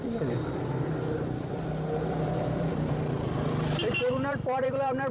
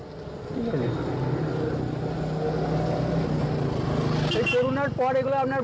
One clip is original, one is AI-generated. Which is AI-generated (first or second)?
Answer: first